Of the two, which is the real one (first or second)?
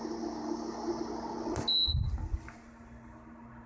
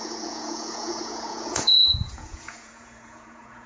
first